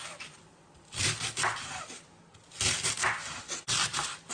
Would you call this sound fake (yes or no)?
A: no